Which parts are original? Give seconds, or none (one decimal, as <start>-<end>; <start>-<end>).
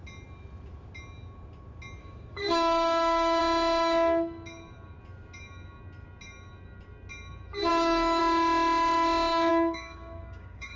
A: 0.0-2.0; 3.4-7.7; 8.2-9.5